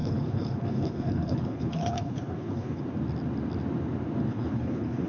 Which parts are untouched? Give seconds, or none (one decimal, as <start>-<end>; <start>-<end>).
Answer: 2.8-4.3